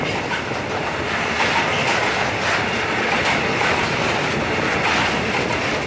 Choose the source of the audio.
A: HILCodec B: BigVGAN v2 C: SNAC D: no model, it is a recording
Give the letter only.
D